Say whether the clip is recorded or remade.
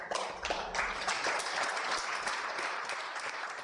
remade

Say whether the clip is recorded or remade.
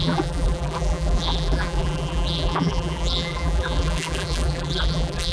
remade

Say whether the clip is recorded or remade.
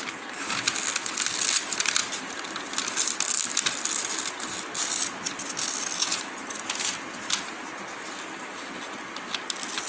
recorded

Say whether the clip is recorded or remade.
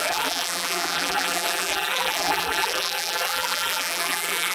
remade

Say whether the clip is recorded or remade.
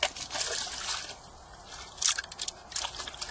recorded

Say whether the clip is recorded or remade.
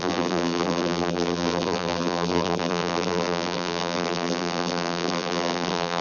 remade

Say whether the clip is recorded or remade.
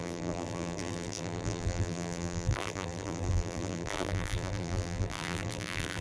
remade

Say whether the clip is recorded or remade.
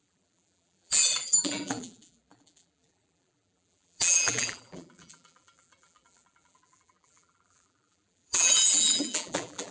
remade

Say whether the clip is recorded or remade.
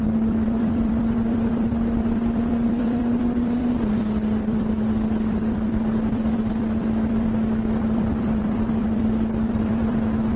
remade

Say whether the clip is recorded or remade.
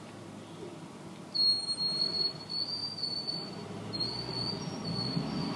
recorded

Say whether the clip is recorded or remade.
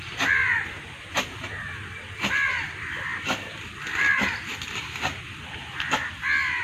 recorded